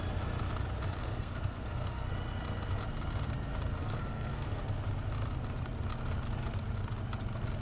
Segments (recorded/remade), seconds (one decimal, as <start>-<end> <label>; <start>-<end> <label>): 0.0-1.0 recorded; 1.0-2.1 remade; 2.1-3.8 recorded; 3.8-4.6 remade; 4.6-7.6 recorded